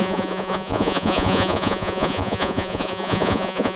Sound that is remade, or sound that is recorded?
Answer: remade